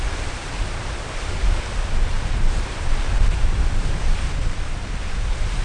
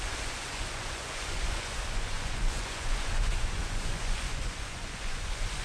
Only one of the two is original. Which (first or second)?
first